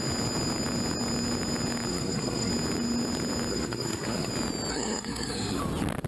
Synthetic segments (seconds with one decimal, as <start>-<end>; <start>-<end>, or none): 1.9-2.5; 3.5-4.3; 4.7-5.6